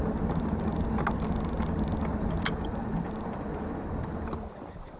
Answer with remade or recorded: recorded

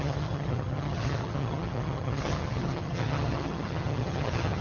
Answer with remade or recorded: remade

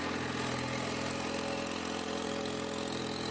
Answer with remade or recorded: recorded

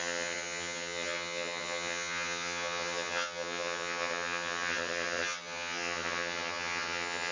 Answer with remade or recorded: remade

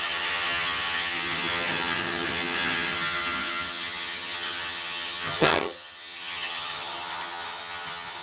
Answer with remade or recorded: remade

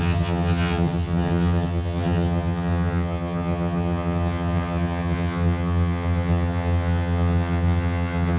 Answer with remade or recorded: remade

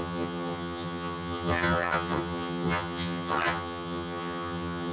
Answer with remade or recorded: remade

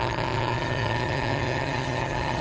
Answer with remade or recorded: remade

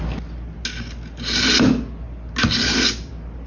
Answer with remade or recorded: recorded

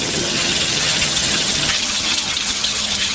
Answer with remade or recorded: remade